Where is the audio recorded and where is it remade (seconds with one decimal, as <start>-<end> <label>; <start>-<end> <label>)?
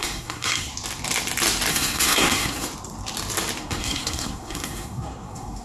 0.0-0.7 remade; 0.7-1.7 recorded; 1.7-2.7 remade; 2.7-3.6 recorded; 3.6-5.6 remade